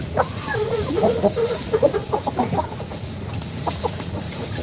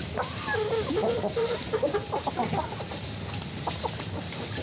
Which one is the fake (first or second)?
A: first